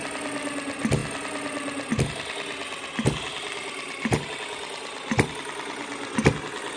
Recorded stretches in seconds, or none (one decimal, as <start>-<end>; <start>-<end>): 0.0-6.8